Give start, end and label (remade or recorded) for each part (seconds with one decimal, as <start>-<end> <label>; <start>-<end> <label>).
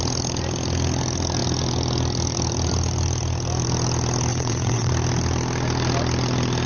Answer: 0.0-4.3 recorded; 4.3-4.9 remade; 4.9-6.7 recorded